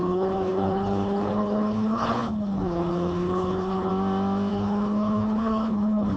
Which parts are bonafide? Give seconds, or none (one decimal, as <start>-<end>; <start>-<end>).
3.9-4.5